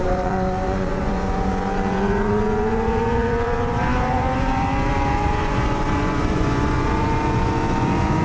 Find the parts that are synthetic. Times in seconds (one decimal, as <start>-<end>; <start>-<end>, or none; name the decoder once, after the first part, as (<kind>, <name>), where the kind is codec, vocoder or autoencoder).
0.0-8.2 (vocoder, Vocos)